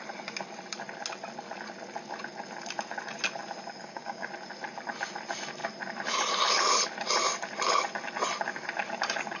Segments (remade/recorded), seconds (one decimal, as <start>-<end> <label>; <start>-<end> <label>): 0.0-3.8 recorded; 3.8-4.3 remade; 4.3-9.4 recorded